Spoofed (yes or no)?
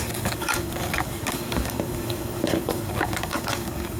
yes